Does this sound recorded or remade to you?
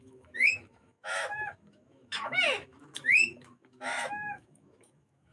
remade